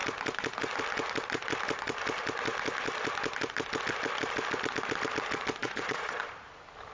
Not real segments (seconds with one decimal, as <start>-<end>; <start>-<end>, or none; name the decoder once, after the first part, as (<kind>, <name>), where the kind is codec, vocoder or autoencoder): 5.6-6.2 (vocoder, Vocos)